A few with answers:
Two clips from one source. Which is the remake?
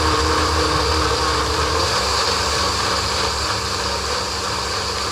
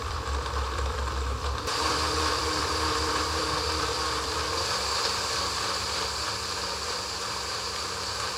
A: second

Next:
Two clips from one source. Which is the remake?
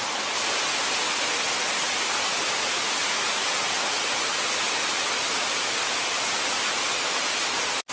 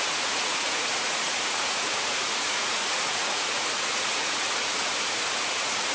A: second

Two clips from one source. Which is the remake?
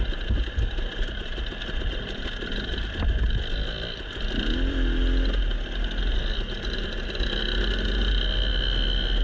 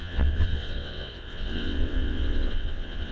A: second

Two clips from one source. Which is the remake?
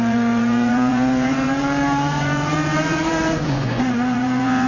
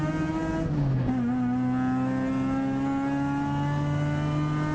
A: first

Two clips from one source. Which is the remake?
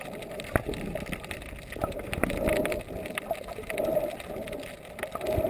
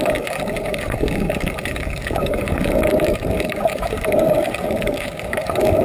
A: second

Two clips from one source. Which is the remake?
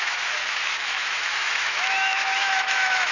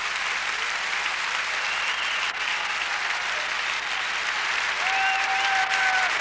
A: first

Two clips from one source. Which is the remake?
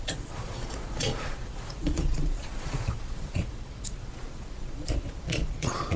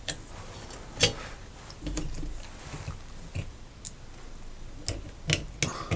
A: first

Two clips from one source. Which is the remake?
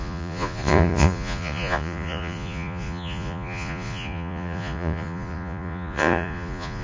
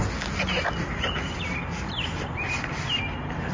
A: first